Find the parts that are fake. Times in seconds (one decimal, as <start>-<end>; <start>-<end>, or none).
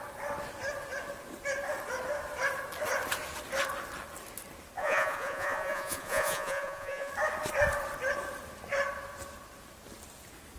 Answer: 4.8-7.1